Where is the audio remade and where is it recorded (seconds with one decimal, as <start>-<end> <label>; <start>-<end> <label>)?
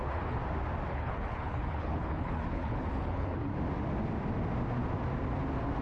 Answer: 0.0-0.4 remade; 0.4-0.9 recorded; 0.9-3.5 remade; 3.5-5.8 recorded